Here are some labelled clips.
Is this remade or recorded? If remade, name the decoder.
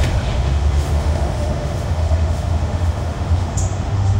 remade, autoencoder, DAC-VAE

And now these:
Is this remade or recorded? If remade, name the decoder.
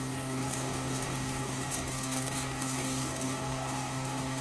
remade, codec, DAC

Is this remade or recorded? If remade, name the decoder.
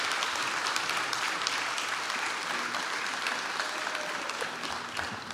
recorded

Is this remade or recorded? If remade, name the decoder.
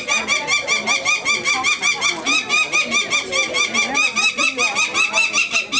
recorded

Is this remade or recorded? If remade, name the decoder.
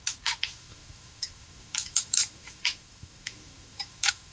remade, autoencoder, DAC-VAE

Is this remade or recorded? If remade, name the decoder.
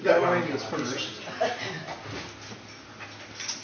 recorded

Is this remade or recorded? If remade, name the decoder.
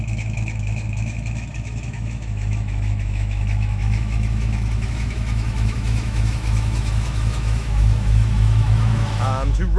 remade, autoencoder, DAC-VAE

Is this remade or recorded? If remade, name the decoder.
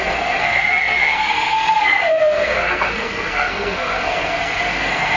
remade, codec, SNAC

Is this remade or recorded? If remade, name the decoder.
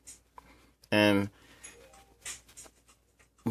recorded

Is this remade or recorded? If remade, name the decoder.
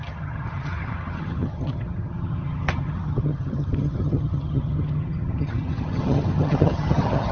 remade, vocoder, HiFi-GAN